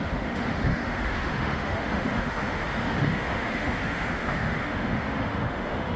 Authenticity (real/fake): fake